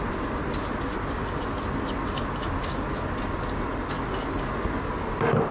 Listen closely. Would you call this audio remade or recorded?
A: recorded